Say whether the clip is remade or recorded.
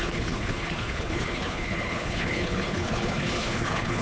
remade